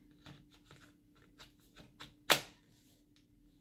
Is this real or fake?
real